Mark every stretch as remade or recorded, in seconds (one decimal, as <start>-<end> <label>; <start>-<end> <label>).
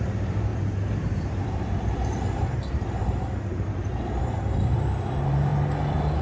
0.0-5.5 remade; 5.5-6.2 recorded